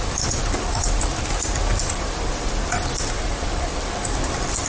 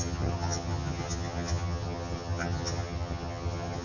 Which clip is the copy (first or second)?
second